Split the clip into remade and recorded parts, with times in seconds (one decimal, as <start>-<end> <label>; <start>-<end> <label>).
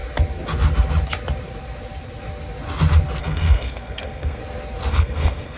0.0-3.2 recorded; 3.2-4.4 remade; 4.4-4.9 recorded; 4.9-5.6 remade